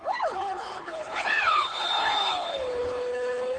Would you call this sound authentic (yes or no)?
no